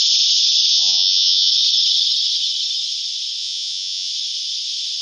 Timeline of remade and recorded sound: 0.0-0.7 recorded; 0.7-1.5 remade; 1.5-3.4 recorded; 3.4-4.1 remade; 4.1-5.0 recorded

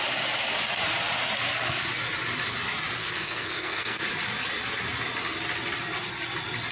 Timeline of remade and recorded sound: 0.0-3.0 recorded; 3.0-4.0 remade; 4.0-6.7 recorded

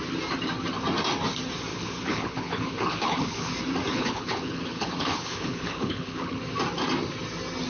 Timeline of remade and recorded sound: 0.0-1.7 recorded; 1.7-3.5 remade; 3.5-3.9 recorded; 3.9-6.4 remade; 6.4-7.7 recorded

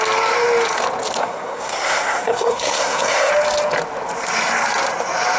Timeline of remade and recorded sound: 0.0-1.2 recorded; 1.2-3.3 remade; 3.3-5.4 recorded

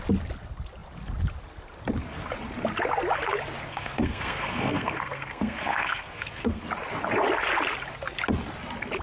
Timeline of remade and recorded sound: 0.0-3.7 recorded; 3.7-6.6 remade; 6.6-9.0 recorded